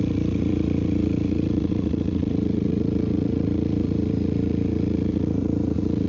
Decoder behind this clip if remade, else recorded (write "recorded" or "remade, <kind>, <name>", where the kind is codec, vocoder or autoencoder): remade, vocoder, Vocos